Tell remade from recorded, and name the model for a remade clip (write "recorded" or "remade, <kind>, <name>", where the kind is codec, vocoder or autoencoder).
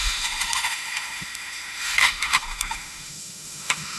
remade, autoencoder, DAC-VAE